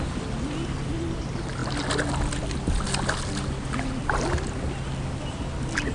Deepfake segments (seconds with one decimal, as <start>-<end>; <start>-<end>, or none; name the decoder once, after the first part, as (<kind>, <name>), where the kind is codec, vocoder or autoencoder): none